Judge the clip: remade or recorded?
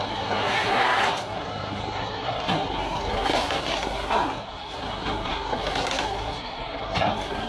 remade